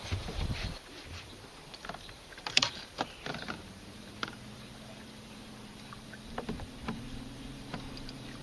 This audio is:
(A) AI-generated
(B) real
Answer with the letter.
A